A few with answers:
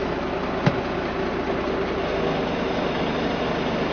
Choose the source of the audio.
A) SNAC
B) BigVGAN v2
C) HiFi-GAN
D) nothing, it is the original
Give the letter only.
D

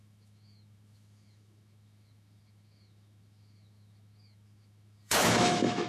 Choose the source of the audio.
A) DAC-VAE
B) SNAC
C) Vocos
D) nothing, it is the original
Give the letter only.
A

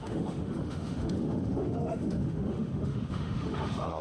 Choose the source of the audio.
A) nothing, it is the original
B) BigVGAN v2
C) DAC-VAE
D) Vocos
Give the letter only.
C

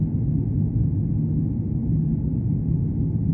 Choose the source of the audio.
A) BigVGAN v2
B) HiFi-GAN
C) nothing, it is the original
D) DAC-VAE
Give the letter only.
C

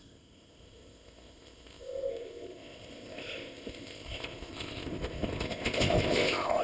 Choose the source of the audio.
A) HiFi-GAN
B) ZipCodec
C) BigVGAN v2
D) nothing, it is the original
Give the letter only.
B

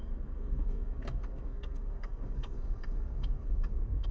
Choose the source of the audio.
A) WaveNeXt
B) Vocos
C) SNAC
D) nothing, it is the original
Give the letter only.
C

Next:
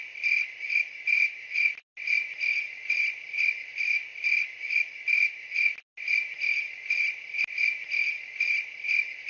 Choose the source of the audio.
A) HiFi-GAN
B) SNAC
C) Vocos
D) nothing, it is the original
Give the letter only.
D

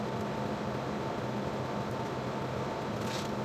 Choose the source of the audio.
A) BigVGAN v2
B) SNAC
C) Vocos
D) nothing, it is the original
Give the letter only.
D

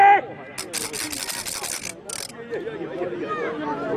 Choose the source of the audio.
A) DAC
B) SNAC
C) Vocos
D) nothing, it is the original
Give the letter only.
D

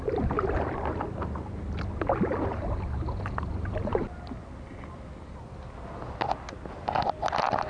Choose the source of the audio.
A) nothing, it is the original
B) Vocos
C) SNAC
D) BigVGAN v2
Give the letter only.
A